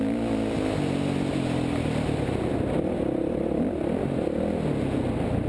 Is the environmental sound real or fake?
real